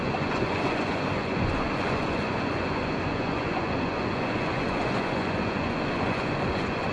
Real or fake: fake